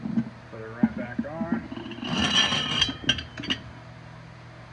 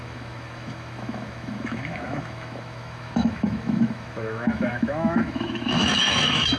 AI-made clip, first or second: second